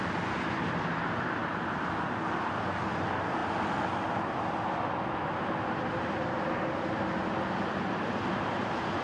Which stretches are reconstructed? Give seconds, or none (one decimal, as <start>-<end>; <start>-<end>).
1.4-1.9